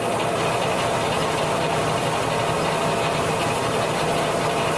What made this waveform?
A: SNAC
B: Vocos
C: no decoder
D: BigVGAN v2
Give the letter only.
C